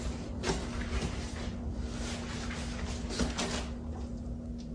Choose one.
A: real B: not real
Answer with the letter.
A